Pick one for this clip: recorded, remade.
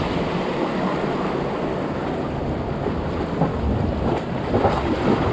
recorded